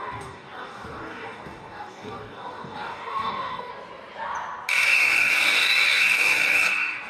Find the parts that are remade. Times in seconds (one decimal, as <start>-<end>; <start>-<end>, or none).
0.0-3.7; 4.7-7.1